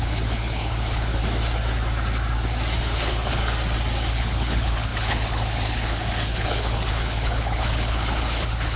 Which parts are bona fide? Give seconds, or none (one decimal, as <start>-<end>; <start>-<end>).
1.2-2.8; 3.4-4.1